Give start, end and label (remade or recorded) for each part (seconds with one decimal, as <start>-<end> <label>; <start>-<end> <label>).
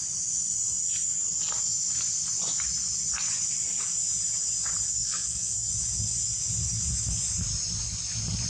0.0-4.9 recorded; 4.9-5.7 remade; 5.7-8.5 recorded